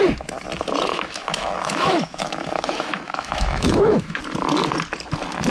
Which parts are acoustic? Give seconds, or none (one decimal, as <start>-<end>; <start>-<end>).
0.0-0.9; 4.2-5.5